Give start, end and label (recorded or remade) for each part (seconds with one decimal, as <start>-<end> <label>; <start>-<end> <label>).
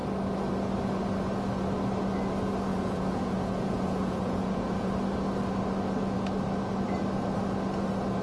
0.0-2.7 recorded; 2.7-4.9 remade; 4.9-8.2 recorded